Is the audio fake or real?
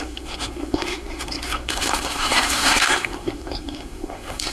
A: fake